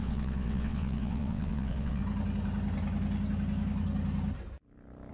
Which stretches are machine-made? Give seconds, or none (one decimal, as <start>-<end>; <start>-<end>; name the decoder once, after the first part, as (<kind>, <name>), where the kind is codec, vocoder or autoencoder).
0.0-2.0 (vocoder, WaveNeXt)